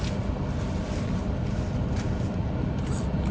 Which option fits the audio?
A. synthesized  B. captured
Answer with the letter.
B